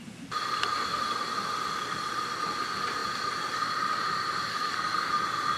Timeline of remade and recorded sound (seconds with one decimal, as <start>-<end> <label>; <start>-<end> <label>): 0.0-4.5 recorded; 4.5-5.1 remade; 5.1-5.6 recorded